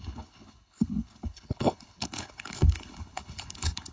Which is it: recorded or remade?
remade